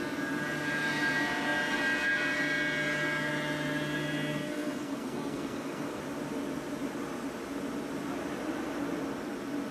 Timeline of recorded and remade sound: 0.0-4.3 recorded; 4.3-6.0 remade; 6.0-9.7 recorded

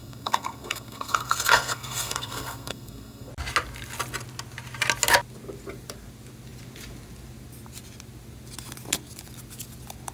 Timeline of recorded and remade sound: 0.0-3.3 remade; 3.3-10.1 recorded

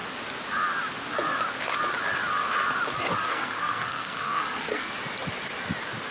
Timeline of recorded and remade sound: 0.0-3.2 recorded; 3.2-4.9 remade; 4.9-6.1 recorded

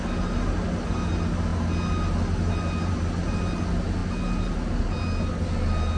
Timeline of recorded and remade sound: 0.0-6.0 recorded

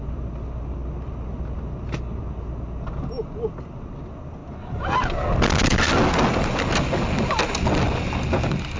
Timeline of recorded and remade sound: 0.0-8.8 recorded